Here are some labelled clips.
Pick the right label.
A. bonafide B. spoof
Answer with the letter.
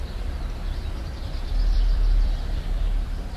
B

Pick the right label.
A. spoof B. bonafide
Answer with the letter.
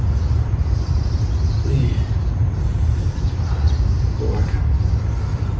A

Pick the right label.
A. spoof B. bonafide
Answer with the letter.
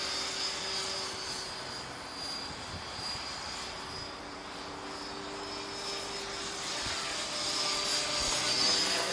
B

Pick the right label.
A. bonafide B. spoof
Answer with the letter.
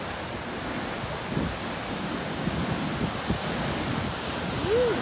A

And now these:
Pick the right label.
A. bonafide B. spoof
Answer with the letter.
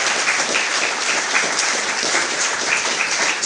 B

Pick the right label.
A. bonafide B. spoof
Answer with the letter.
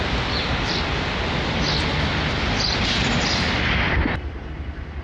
B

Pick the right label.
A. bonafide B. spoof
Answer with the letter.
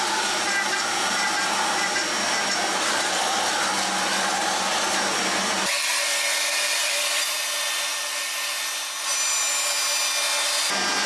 A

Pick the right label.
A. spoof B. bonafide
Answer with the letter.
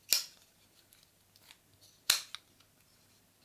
B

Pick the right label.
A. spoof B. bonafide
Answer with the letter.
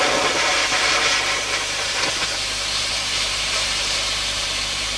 A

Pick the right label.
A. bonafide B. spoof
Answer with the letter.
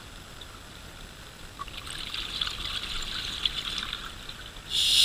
A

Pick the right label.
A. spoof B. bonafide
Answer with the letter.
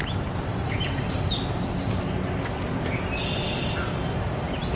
B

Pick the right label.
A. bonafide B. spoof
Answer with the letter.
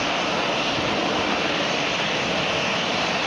B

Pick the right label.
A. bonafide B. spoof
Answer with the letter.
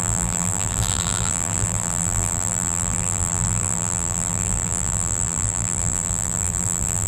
B